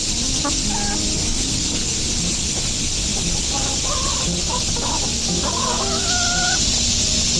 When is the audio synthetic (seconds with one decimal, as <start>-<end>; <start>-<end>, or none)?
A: 1.2-2.0